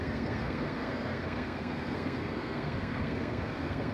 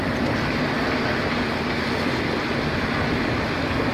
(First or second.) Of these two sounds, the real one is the second